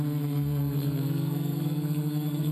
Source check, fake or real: fake